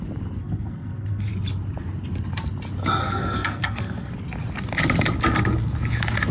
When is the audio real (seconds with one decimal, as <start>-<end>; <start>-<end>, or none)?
0.0-0.4; 1.3-3.0; 4.1-6.3